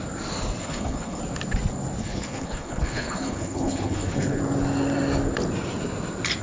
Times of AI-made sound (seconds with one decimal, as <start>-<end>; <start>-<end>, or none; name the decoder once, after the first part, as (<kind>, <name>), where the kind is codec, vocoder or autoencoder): 0.6-1.2 (codec, HILCodec); 2.0-4.4

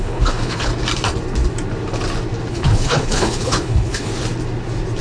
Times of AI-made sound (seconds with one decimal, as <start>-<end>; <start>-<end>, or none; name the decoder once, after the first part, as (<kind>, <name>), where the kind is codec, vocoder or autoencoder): 0.0-0.7 (codec, HILCodec); 2.5-4.1